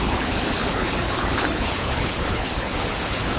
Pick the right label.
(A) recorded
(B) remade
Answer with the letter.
B